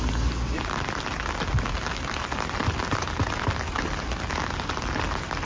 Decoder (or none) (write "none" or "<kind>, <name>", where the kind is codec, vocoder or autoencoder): none